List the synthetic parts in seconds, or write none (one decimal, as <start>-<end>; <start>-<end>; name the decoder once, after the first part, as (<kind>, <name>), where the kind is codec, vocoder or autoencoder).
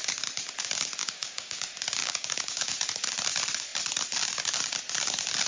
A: 1.0-1.6 (codec, DAC); 2.0-2.7